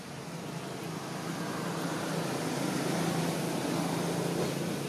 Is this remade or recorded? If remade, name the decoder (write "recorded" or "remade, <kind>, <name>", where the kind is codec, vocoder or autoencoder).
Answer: recorded